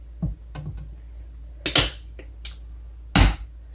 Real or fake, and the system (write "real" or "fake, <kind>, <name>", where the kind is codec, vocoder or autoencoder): real